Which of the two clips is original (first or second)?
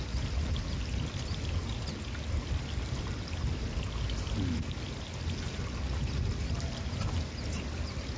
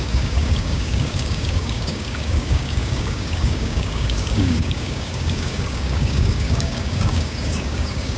first